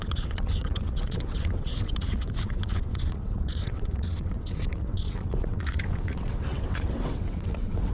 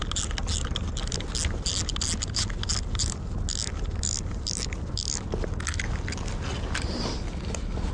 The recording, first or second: second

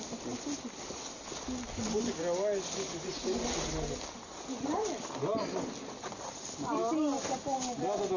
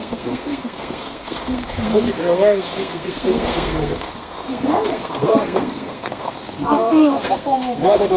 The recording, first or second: first